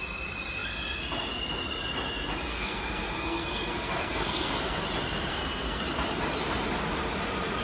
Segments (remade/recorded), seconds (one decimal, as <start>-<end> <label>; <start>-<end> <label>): 0.0-2.5 recorded; 2.5-4.8 remade; 4.8-5.3 recorded; 5.3-5.8 remade; 5.8-7.6 recorded